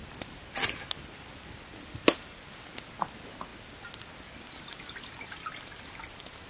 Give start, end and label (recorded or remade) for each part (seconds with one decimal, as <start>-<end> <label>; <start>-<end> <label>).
0.0-6.5 recorded